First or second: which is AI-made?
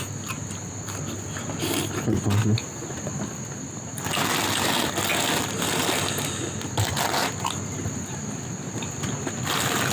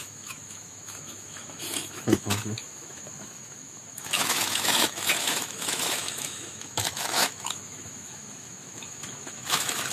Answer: second